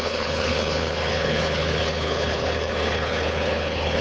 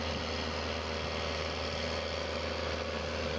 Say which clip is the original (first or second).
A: second